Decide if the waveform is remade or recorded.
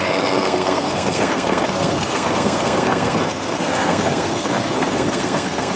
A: remade